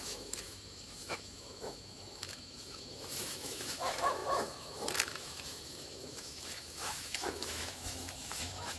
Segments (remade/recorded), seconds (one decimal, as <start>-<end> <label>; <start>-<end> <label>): 0.0-8.8 remade